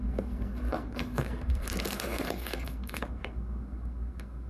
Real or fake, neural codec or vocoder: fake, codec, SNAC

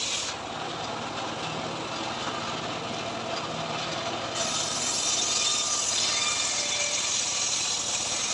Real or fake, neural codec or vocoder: real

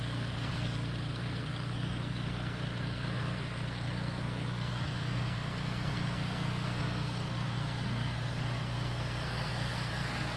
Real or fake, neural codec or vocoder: fake, codec, SNAC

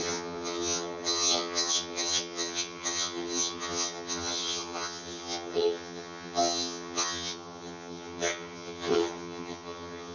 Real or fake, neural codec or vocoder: fake, vocoder, HiFi-GAN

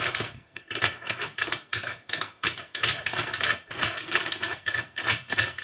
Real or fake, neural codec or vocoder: fake, codec, SNAC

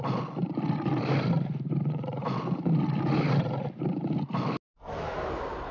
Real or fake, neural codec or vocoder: real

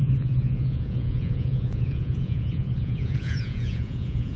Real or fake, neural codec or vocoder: fake, vocoder, Vocos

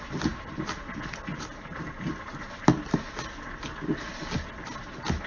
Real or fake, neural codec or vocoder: real